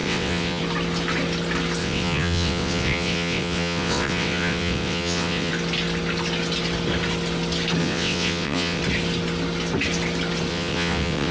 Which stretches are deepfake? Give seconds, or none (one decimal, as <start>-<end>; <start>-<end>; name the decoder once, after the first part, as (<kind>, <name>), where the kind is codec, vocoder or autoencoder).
0.0-0.6 (vocoder, WaveNeXt); 1.8-5.5; 7.8-8.8; 10.5-11.3